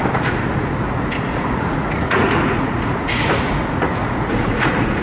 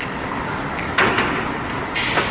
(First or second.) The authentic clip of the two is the second